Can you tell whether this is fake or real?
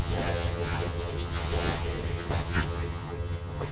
fake